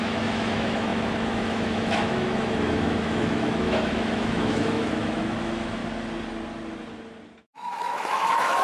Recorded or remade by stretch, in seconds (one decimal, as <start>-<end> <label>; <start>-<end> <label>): 0.0-5.8 remade; 5.8-7.4 recorded; 7.4-8.6 remade

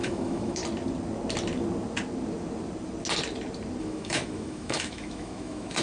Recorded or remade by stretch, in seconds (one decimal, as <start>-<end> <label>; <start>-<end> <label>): 0.0-0.6 remade; 0.6-3.8 recorded; 3.8-5.8 remade

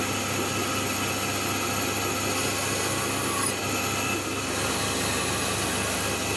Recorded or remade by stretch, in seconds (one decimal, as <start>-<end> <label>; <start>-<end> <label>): 0.0-6.4 recorded

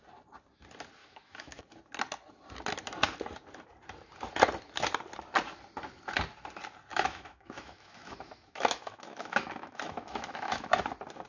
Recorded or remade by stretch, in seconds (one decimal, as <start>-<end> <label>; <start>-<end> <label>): 0.0-1.0 recorded; 1.0-1.6 remade; 1.6-6.9 recorded; 6.9-10.8 remade; 10.8-11.3 recorded

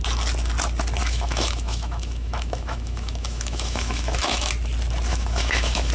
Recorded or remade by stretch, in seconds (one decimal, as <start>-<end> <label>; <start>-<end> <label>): 0.0-1.0 recorded; 1.0-4.5 remade; 4.5-5.1 recorded; 5.1-5.9 remade